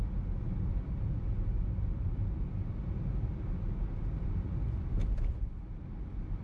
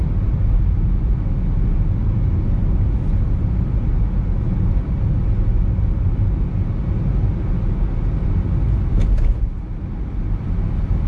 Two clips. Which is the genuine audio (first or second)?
second